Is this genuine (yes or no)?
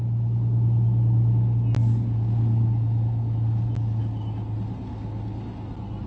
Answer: yes